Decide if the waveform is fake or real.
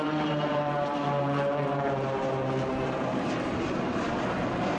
fake